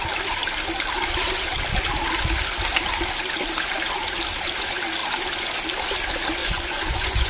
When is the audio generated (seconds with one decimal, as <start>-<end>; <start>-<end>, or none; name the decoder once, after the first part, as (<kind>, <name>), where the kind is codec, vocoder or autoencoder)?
6.4-7.3 (vocoder, Vocos)